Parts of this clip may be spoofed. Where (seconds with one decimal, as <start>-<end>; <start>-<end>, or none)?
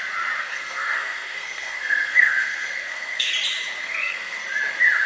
0.4-3.3; 3.8-4.4